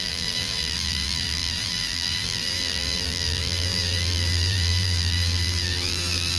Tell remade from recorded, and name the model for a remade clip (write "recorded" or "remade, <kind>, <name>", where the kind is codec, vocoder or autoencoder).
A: remade, vocoder, BigVGAN v2